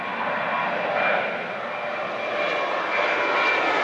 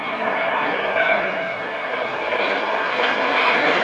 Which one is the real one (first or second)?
first